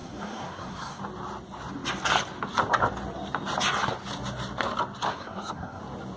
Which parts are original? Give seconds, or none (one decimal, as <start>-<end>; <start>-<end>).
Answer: 1.0-5.1; 5.8-6.2